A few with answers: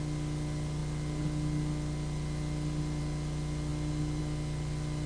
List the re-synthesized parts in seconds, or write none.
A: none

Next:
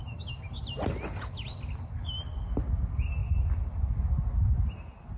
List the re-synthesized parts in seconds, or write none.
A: none

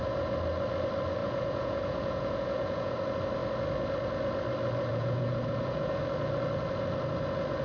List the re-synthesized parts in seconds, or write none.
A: 1.2-2.9 (vocoder, Vocos); 4.9-6.0